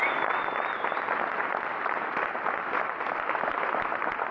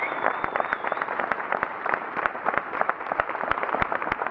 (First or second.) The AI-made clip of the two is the second